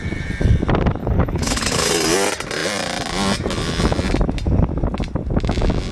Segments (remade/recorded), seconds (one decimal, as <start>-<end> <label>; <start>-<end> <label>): 0.0-1.0 recorded; 1.0-1.9 remade; 1.9-5.9 recorded